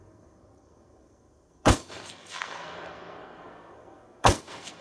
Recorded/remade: remade